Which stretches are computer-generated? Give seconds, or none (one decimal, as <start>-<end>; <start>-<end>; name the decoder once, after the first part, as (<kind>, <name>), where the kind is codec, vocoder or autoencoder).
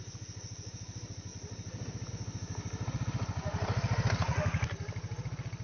none